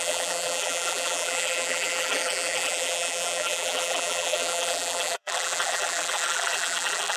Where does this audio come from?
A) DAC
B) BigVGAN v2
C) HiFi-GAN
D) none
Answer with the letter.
B